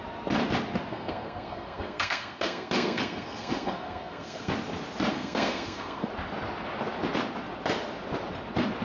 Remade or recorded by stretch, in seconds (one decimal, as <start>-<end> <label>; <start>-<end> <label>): 0.0-0.9 recorded; 0.9-4.5 remade; 4.5-5.1 recorded; 5.1-6.1 remade; 6.1-8.8 recorded